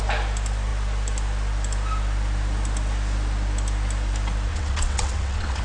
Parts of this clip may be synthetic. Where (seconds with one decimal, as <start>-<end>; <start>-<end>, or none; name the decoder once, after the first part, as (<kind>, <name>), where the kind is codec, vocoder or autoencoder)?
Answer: 4.5-5.6 (vocoder, WaveNeXt)

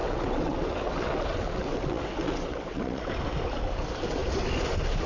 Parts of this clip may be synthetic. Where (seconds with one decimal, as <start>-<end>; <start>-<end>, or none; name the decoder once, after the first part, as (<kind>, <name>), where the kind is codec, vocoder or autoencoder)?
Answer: 0.0-3.1 (vocoder, WaveNeXt)